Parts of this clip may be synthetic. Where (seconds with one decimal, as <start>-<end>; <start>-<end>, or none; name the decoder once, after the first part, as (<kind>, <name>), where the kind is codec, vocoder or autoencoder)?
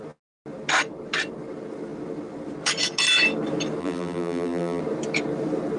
3.8-4.8 (vocoder, BigVGAN v2)